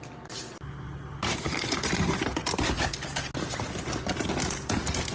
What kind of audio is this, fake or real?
real